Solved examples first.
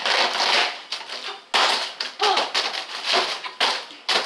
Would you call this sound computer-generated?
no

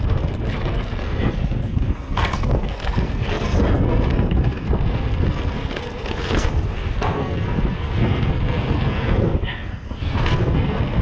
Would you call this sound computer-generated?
yes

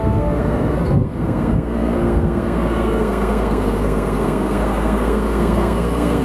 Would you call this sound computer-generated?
yes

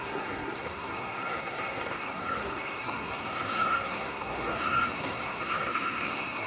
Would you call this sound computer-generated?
yes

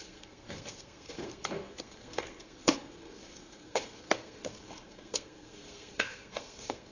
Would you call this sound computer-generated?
yes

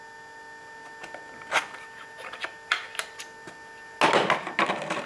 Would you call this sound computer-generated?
no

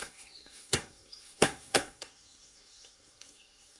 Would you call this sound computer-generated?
yes